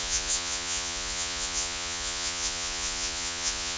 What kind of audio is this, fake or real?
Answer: fake